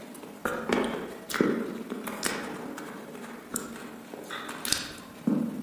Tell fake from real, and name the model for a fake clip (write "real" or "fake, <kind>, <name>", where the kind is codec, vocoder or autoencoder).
real